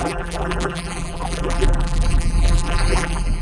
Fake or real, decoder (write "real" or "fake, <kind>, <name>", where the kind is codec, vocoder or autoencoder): fake, vocoder, BigVGAN v2